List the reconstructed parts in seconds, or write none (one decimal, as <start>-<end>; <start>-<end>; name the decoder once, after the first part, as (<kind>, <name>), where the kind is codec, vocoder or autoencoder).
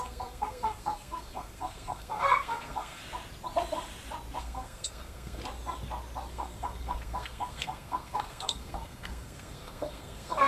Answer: 0.0-3.0 (codec, SNAC); 4.4-5.4; 6.3-10.5